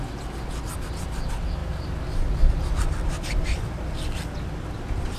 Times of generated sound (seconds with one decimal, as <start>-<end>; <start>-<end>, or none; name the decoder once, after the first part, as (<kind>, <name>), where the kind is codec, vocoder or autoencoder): none